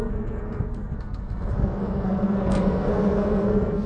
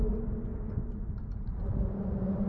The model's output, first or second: first